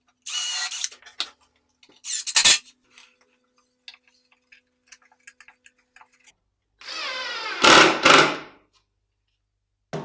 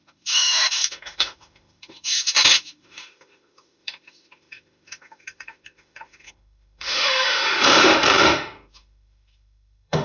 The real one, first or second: first